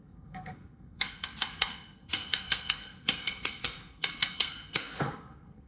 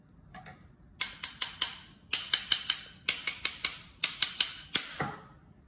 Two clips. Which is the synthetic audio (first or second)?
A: first